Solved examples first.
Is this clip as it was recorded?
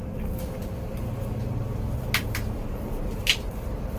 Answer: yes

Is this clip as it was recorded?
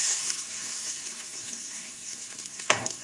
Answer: no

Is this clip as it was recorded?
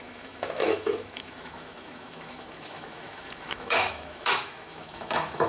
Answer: no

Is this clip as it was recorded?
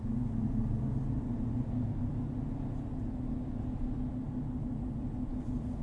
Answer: yes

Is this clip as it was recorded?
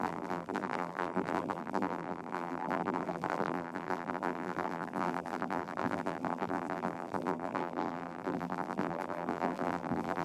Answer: no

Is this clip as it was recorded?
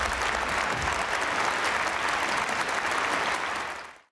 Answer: yes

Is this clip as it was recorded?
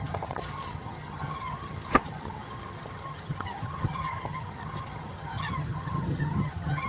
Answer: no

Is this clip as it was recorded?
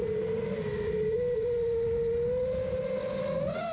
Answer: yes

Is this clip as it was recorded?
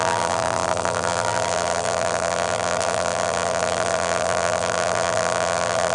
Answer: no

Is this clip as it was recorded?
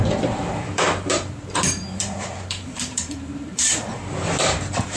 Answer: no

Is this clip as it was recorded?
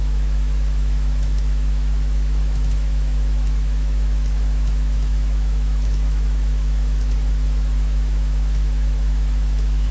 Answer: no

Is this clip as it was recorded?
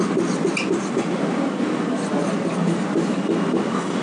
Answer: yes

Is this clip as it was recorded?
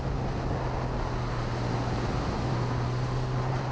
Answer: yes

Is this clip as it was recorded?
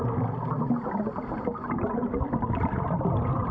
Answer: yes